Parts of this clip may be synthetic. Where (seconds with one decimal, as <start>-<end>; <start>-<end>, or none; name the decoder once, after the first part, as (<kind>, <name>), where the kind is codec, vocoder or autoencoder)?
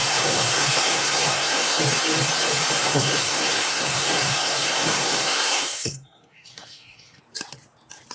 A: 0.0-1.8 (codec, SNAC); 2.8-7.2